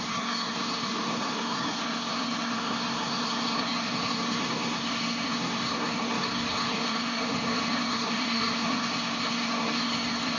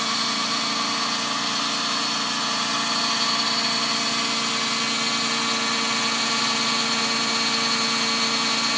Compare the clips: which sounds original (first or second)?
second